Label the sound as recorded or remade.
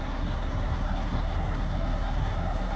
remade